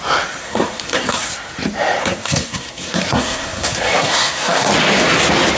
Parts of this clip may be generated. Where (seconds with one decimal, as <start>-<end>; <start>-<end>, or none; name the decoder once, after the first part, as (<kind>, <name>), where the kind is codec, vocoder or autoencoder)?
0.4-1.3 (codec, SNAC); 2.0-4.7